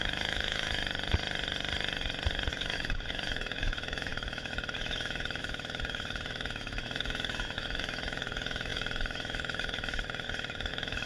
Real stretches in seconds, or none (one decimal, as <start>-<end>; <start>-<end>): 0.8-2.5